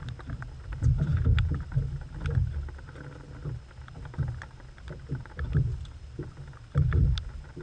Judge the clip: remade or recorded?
recorded